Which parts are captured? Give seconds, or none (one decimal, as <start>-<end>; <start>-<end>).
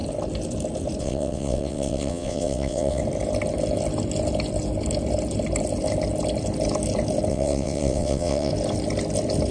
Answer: 0.0-1.0; 3.0-7.3; 8.5-9.5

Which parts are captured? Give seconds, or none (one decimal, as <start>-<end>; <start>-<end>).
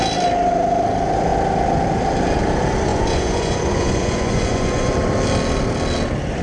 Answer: 0.0-2.9; 4.9-6.4